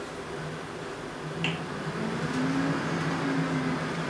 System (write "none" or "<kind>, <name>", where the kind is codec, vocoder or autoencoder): none